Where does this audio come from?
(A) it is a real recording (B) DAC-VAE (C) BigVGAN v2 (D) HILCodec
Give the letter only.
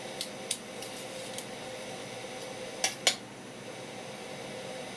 A